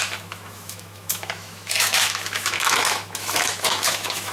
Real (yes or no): no